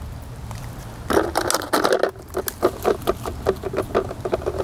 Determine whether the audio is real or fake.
real